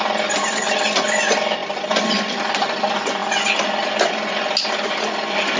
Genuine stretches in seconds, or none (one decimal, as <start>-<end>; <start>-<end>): 0.0-5.6